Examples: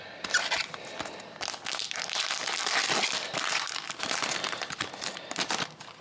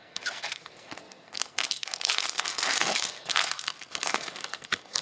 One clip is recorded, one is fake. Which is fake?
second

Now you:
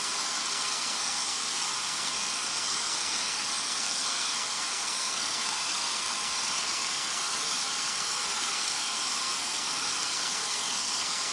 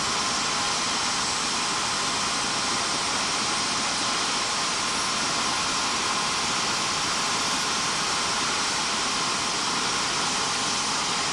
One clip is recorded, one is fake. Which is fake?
first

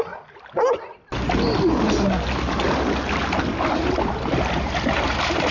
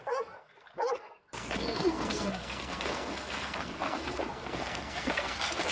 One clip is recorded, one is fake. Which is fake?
second